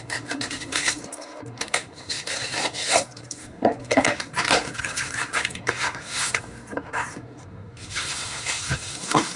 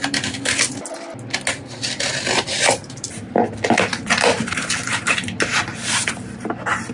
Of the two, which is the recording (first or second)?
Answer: second